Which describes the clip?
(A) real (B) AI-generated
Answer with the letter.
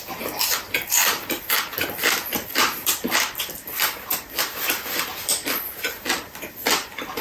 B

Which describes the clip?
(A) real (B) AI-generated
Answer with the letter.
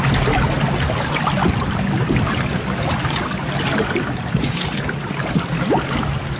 A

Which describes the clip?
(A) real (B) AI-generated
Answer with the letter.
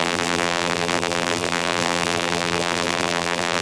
B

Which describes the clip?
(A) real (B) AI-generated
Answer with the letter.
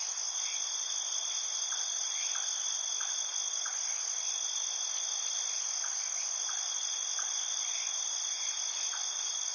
A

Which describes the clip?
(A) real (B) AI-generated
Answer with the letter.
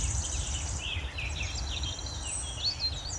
A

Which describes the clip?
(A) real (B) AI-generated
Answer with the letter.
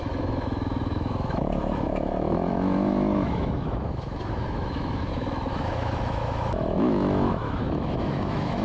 B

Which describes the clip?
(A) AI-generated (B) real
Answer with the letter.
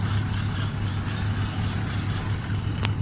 B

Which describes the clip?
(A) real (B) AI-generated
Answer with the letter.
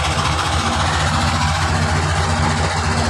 A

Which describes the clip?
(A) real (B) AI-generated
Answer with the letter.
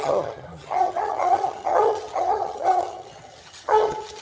B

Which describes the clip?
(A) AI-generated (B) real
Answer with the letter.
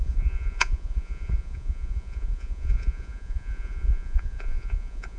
A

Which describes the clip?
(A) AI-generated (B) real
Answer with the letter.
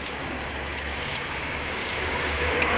A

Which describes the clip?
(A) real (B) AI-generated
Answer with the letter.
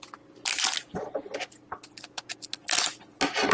A